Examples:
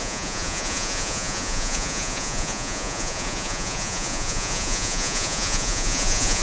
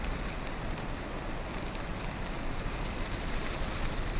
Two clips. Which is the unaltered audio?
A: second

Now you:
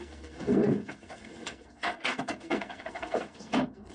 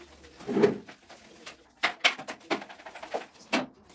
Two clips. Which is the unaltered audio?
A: second